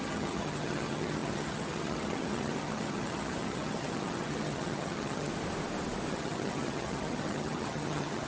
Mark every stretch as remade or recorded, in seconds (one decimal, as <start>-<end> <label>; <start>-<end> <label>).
0.0-5.3 remade; 5.3-6.1 recorded; 6.1-8.3 remade